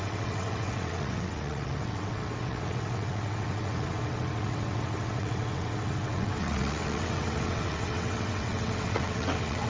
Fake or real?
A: fake